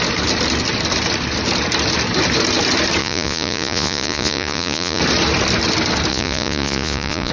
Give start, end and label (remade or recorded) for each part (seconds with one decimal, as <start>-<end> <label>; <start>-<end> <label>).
0.0-3.0 recorded; 3.0-5.0 remade; 5.0-6.1 recorded; 6.1-7.3 remade